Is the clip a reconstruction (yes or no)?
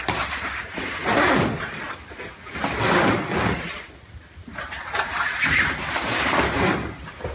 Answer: no